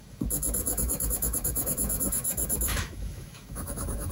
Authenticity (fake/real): fake